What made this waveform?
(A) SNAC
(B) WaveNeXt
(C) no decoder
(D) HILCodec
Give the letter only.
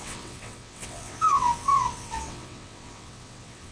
B